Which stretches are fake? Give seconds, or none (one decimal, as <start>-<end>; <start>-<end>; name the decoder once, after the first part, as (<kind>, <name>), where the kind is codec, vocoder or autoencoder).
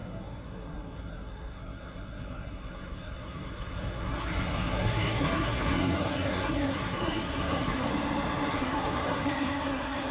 0.0-7.9 (codec, SNAC); 8.5-10.1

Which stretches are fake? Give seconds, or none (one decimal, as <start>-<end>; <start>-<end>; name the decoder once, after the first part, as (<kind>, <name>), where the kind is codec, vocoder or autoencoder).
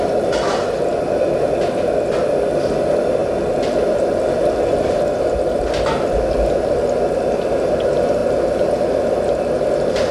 none